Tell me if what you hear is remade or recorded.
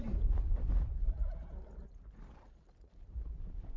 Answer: remade